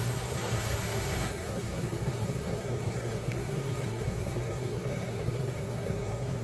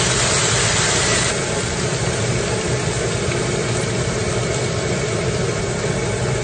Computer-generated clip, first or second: first